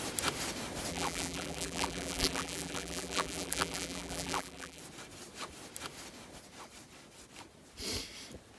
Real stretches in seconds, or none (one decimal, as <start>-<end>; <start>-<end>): 0.0-0.9; 4.8-8.6